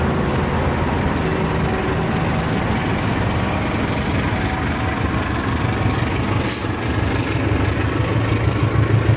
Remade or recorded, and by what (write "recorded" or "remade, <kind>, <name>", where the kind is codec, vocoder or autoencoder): recorded